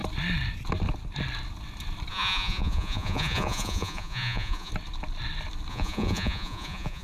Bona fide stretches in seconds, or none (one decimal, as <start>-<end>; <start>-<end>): 0.0-2.1; 4.7-5.7